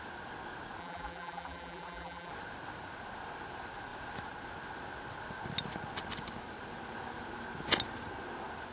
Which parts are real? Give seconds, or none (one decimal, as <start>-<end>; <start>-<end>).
0.0-0.8; 2.3-8.7